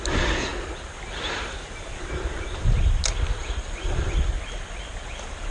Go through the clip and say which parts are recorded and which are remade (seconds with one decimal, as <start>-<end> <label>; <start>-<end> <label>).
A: 0.0-3.4 recorded; 3.4-4.3 remade; 4.3-5.5 recorded